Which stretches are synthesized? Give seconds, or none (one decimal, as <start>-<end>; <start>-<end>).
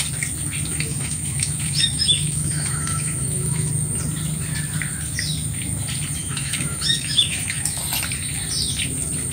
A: 0.7-3.7; 6.2-7.8